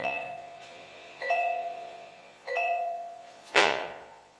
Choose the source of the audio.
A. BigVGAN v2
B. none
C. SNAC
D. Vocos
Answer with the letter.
D